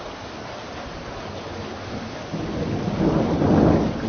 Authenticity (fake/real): real